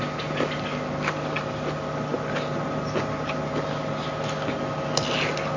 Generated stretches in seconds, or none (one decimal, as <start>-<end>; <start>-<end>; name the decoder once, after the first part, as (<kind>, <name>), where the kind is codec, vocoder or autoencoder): none